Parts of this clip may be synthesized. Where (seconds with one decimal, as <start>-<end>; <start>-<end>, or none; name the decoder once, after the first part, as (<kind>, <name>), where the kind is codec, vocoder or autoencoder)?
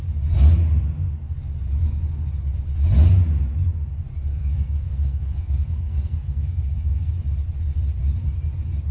4.3-7.1 (codec, SNAC)